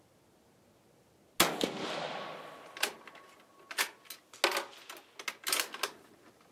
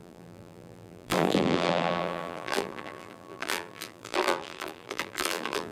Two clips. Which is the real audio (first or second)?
first